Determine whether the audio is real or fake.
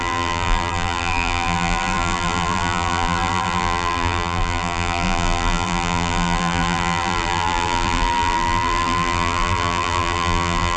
fake